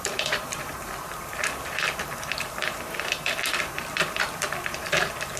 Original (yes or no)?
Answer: no